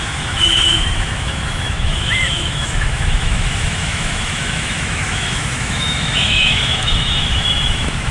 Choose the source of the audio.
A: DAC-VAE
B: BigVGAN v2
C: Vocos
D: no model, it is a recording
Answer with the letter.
A